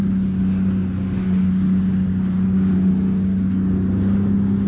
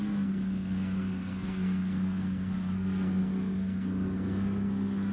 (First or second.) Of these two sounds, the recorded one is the first